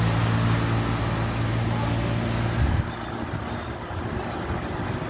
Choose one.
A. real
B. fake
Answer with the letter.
A